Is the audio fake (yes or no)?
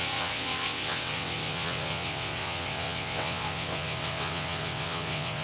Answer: yes